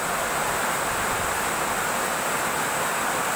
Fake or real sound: real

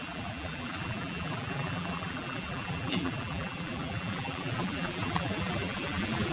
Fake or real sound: fake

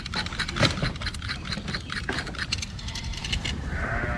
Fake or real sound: fake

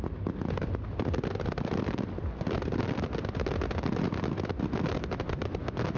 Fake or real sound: real